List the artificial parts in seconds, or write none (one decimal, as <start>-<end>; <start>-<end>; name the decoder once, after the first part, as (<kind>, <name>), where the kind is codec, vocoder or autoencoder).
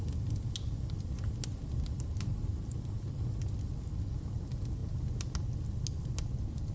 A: none